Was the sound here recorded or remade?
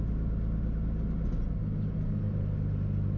recorded